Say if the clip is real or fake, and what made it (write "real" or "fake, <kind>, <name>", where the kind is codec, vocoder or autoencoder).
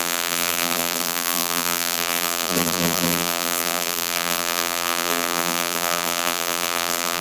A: fake, vocoder, BigVGAN v2